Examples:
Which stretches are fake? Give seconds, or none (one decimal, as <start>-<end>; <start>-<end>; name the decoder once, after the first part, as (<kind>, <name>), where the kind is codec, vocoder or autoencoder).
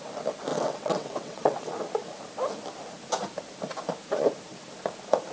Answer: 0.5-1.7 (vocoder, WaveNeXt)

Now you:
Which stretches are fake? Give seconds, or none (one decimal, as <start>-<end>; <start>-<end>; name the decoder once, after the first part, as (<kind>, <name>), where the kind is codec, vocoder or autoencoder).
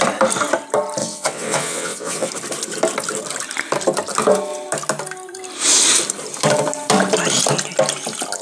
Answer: 1.0-2.3 (vocoder, WaveNeXt)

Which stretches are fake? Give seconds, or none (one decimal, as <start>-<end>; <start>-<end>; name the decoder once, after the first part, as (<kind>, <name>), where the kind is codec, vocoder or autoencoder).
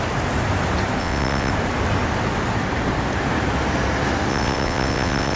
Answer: 1.0-1.5 (vocoder, WaveNeXt); 4.3-5.4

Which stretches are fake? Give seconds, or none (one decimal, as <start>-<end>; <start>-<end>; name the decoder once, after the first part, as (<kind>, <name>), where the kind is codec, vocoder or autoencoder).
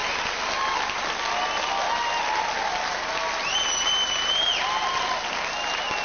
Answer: none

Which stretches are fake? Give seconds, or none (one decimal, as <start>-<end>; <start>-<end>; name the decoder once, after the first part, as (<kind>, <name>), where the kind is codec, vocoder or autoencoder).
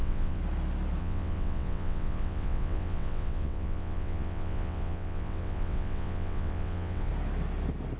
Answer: 0.0-0.4 (vocoder, WaveNeXt); 1.0-7.1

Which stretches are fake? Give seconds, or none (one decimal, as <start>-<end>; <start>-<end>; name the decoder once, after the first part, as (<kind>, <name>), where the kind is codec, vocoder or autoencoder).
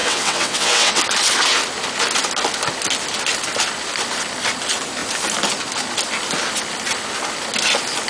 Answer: 0.0-1.0 (vocoder, WaveNeXt)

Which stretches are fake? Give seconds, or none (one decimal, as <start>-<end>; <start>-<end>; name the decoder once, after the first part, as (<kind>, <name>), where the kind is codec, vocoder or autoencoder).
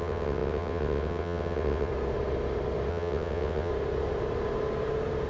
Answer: 0.0-1.9 (vocoder, WaveNeXt); 2.9-3.7